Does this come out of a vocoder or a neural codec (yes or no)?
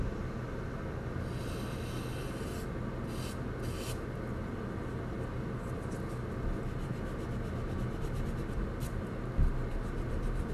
no